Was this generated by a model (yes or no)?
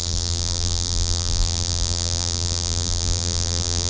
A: yes